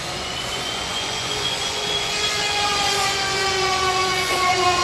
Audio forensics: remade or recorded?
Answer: remade